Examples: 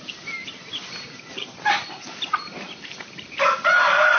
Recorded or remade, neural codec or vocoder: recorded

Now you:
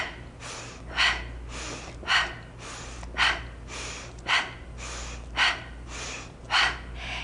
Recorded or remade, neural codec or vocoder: recorded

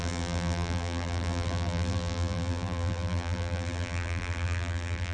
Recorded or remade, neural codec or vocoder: remade, vocoder, BigVGAN v2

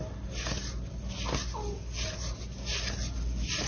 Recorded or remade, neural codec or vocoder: recorded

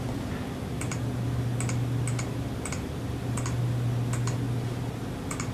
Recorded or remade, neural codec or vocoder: recorded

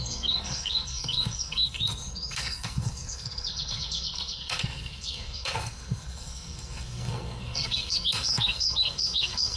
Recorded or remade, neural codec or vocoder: remade, codec, SNAC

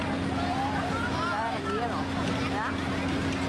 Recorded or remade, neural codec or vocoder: recorded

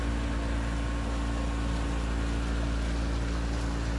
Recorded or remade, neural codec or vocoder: recorded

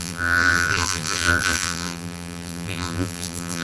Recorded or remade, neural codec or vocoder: remade, vocoder, BigVGAN v2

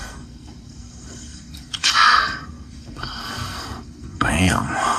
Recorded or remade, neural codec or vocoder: remade, codec, SNAC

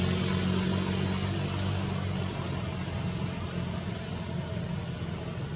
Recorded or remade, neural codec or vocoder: recorded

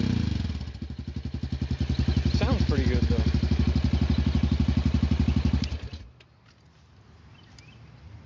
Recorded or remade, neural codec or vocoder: recorded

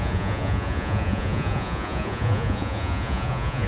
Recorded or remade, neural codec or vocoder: remade, vocoder, Vocos